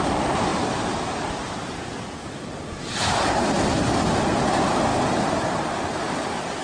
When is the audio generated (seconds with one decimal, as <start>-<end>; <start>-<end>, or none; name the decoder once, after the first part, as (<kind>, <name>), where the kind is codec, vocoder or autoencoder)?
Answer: none